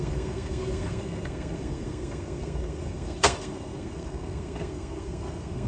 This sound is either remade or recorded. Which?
remade